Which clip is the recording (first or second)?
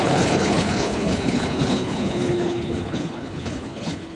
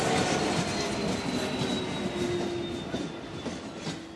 second